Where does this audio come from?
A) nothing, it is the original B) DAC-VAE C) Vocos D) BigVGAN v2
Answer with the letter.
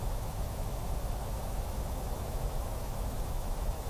B